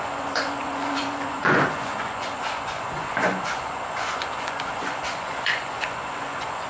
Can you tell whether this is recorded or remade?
remade